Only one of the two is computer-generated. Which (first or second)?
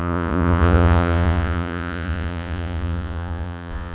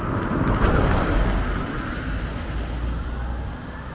first